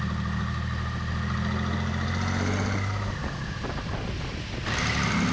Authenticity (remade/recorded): recorded